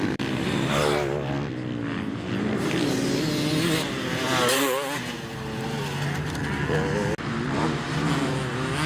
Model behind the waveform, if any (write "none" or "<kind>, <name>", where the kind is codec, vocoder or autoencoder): none